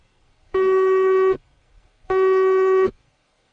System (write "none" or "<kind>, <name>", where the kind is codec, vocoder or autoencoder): codec, SNAC